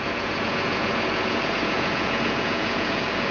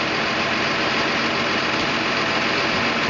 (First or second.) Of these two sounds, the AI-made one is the first